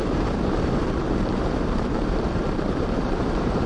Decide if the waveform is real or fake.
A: fake